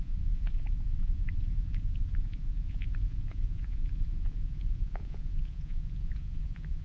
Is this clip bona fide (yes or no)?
no